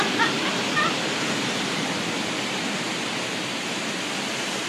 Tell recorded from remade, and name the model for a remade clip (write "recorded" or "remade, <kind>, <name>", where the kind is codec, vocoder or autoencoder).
recorded